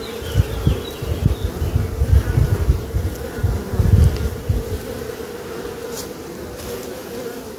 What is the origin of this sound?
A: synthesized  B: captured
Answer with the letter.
B